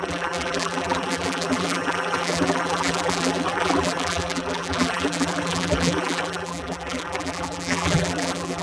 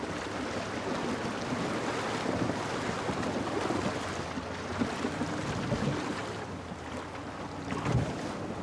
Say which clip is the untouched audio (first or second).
second